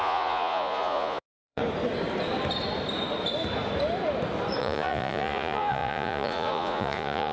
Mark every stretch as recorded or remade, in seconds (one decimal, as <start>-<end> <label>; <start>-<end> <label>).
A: 0.0-1.6 remade; 1.6-4.6 recorded; 4.6-7.3 remade